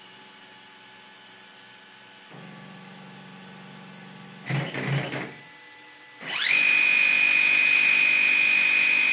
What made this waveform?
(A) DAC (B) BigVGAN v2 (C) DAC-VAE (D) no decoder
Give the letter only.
D